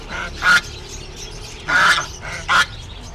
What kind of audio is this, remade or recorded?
recorded